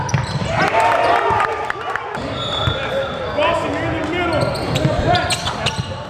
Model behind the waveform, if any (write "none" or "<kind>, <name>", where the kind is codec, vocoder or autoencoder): none